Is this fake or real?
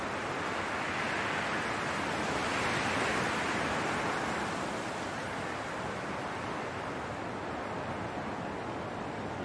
real